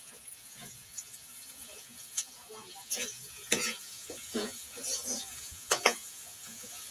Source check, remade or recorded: remade